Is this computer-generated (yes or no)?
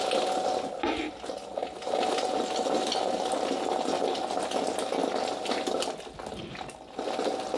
no